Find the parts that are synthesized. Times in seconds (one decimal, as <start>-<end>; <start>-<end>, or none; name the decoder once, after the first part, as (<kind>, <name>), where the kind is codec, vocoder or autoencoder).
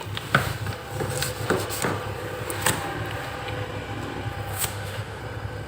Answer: 4.5-5.2 (autoencoder, DAC-VAE)